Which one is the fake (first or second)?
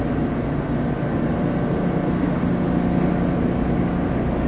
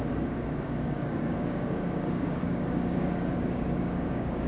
second